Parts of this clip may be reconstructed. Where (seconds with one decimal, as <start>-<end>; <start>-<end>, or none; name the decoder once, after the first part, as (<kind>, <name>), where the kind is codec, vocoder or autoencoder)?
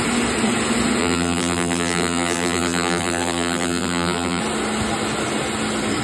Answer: 1.0-4.4 (vocoder, BigVGAN v2)